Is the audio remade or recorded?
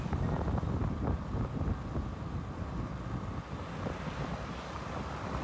recorded